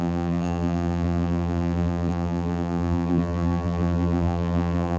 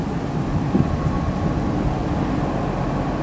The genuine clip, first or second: second